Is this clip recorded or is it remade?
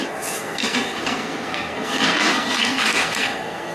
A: remade